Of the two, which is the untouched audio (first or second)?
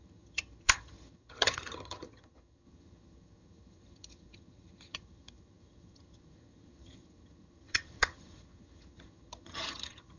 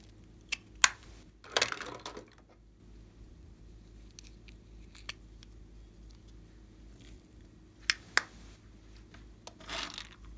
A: second